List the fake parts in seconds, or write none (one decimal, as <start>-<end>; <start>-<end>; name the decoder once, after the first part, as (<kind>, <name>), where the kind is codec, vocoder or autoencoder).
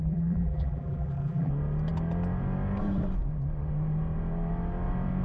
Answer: 0.0-1.5 (vocoder, BigVGAN v2)